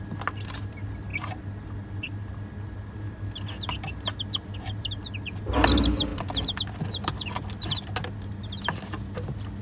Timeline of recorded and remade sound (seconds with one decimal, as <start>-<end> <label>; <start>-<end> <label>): 0.0-9.6 recorded